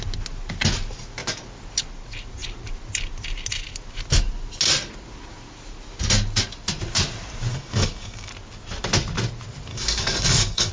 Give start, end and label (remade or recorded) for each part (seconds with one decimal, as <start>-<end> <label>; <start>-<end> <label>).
0.0-7.5 recorded; 7.5-8.3 remade; 8.3-9.7 recorded; 9.7-10.7 remade